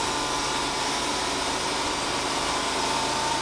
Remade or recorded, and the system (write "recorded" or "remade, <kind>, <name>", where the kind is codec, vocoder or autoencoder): recorded